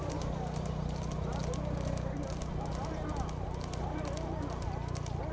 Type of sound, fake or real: real